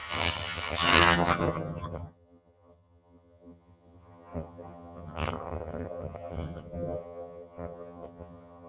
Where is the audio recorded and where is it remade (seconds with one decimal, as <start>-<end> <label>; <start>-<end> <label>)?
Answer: 0.0-8.7 remade